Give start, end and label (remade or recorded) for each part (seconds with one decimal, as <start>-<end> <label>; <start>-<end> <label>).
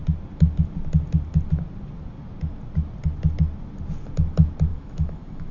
0.0-4.7 recorded; 4.7-5.5 remade